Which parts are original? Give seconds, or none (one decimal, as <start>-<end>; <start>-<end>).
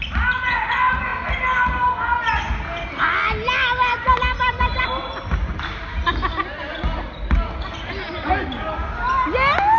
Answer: 0.0-9.8